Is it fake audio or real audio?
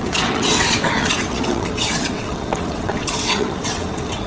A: fake